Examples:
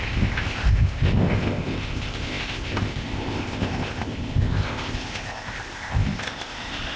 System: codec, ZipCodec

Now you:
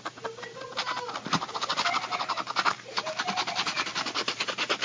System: none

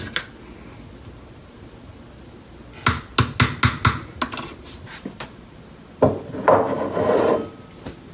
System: none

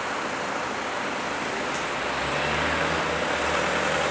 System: none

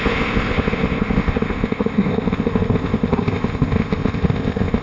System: codec, ZipCodec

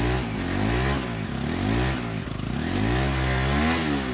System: none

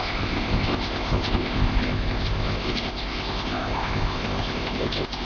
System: codec, ZipCodec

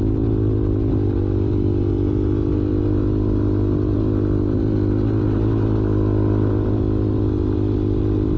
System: none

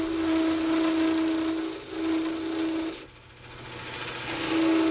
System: none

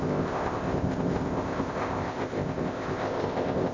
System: codec, ZipCodec